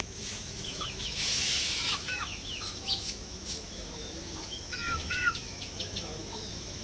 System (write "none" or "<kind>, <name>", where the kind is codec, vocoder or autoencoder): autoencoder, DAC-VAE